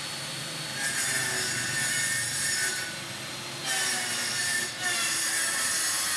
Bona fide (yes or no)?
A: yes